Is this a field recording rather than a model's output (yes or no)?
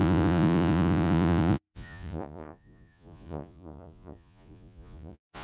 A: no